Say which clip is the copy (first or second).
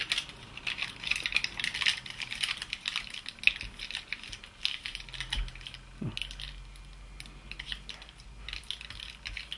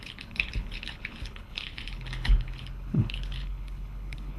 second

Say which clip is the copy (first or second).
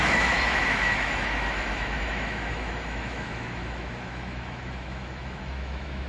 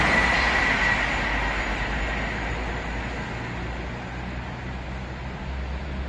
first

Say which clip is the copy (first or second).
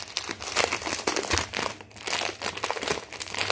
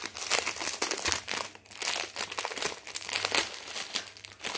first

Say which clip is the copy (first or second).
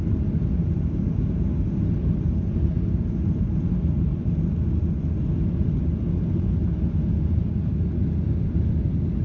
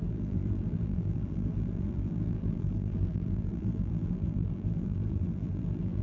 second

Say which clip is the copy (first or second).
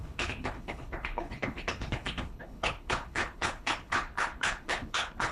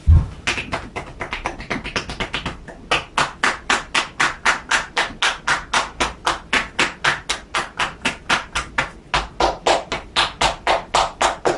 first